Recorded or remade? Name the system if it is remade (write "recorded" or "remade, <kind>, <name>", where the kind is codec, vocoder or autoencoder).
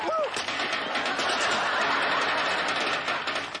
recorded